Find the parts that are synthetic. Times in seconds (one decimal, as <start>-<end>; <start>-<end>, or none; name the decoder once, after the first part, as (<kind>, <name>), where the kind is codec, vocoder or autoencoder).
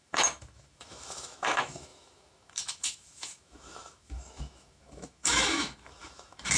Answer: 0.0-6.6 (autoencoder, DAC-VAE)